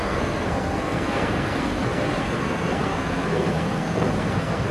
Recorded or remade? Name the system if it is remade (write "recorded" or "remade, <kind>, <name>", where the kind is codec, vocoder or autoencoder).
remade, codec, SNAC